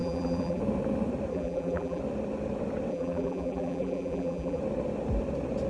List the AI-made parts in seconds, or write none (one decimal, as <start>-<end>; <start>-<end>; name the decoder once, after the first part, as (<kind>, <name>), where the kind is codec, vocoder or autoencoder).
0.0-0.6 (vocoder, BigVGAN v2); 1.3-2.0; 2.9-4.6